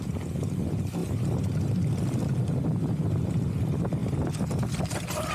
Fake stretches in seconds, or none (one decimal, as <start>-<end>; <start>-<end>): none